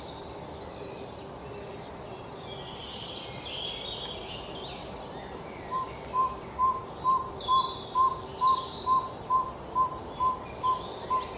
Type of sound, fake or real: real